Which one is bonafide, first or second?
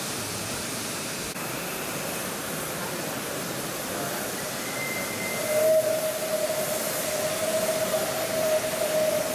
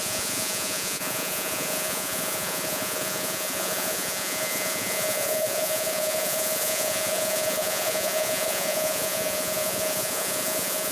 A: first